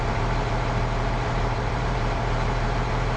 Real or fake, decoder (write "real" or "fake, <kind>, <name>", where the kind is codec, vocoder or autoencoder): fake, vocoder, BigVGAN v2